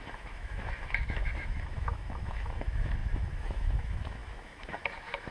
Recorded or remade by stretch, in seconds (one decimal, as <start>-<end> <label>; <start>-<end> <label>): 0.0-5.3 remade